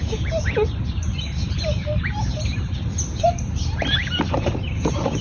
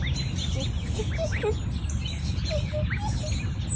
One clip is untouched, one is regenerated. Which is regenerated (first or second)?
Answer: first